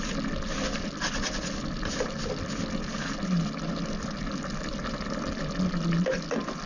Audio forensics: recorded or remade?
recorded